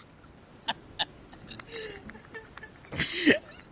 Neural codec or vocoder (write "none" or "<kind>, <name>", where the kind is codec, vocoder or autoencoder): none